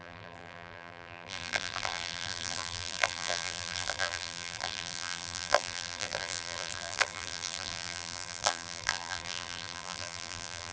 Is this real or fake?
fake